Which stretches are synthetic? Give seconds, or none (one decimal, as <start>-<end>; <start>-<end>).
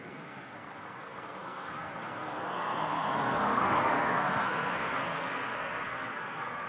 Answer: 0.0-6.7